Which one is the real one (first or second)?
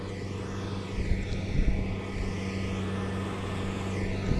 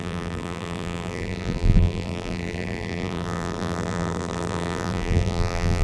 first